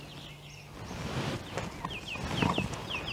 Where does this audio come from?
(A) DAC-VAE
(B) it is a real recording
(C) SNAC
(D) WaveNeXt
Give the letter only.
B